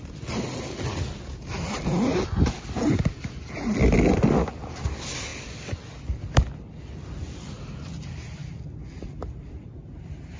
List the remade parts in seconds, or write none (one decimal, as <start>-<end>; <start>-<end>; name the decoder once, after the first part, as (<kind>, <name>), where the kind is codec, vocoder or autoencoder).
none